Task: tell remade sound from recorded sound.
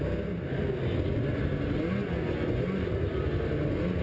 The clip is recorded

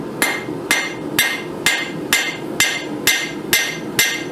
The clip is recorded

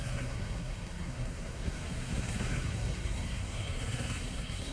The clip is remade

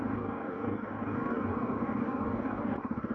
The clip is remade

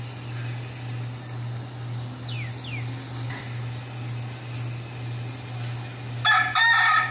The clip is recorded